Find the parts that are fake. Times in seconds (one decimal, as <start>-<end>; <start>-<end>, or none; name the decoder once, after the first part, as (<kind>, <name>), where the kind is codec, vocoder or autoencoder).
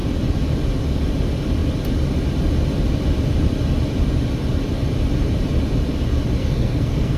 6.4-7.2 (codec, SNAC)